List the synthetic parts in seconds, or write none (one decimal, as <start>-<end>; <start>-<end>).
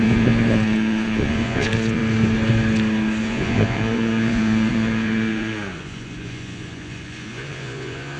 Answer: 0.0-2.0; 3.2-8.2